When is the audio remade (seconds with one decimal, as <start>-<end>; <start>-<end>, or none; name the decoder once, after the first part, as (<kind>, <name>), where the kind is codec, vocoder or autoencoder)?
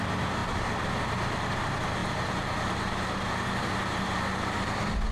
none